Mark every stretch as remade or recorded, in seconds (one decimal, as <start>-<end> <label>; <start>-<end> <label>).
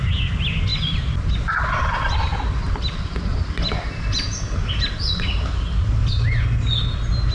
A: 0.0-7.3 recorded